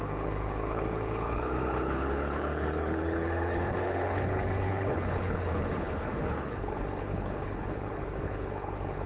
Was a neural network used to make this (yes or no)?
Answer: yes